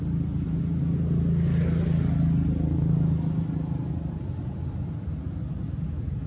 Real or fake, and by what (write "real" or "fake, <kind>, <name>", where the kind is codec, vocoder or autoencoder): real